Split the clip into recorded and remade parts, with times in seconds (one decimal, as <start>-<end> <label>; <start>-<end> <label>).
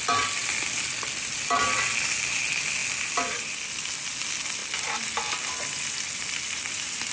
0.0-4.6 recorded; 4.6-6.1 remade; 6.1-7.1 recorded